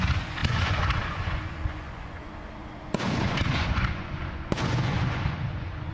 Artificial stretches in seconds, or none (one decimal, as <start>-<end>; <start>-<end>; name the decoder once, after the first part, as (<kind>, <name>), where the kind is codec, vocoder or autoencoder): 0.0-5.9 (vocoder, Vocos)